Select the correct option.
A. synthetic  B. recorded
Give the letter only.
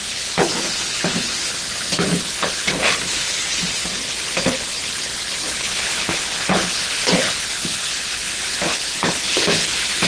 A